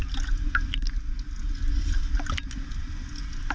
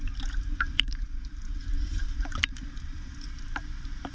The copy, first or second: second